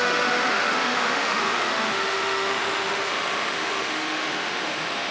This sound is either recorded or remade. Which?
remade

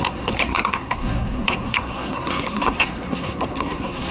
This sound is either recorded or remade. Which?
remade